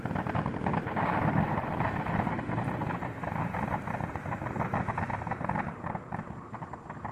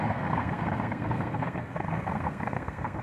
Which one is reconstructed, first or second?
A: second